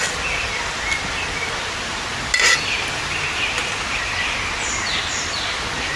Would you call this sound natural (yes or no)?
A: yes